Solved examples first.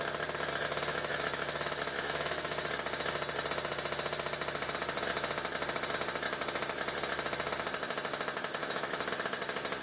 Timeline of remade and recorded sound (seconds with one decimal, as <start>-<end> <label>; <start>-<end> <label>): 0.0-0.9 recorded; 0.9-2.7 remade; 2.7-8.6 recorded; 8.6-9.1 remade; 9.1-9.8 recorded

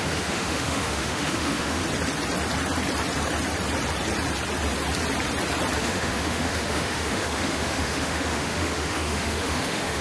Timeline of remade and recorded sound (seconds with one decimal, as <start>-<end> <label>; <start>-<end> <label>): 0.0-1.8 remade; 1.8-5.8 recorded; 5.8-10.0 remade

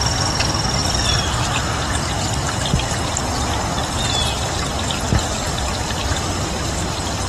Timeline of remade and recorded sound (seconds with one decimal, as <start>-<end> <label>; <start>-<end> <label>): 0.0-7.3 recorded